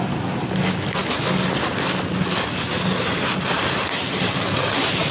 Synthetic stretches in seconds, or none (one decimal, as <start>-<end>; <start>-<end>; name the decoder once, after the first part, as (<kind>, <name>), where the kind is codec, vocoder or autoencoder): none